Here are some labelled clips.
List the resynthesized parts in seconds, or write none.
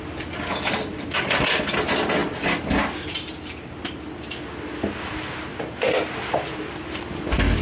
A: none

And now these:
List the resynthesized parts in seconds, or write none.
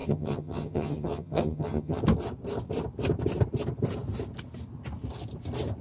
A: 0.0-2.0 (vocoder, HiFi-GAN)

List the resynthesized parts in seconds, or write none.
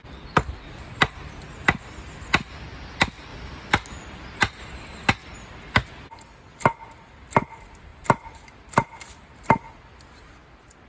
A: none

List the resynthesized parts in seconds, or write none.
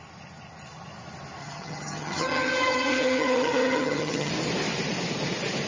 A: 1.4-4.3 (vocoder, HiFi-GAN)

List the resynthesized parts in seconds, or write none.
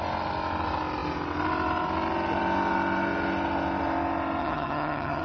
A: 4.4-5.2 (vocoder, HiFi-GAN)